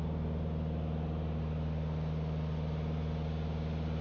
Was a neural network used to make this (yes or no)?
no